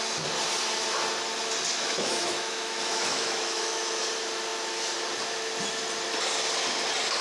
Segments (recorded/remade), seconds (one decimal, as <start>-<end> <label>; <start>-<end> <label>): 0.0-1.7 recorded; 1.7-4.0 remade; 4.0-7.2 recorded